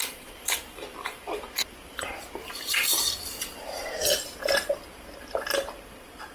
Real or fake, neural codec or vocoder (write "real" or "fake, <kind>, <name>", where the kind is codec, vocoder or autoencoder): fake, vocoder, BigVGAN v2